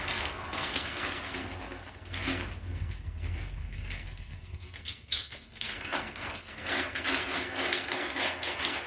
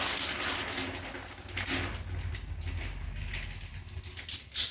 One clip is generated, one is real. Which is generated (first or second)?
first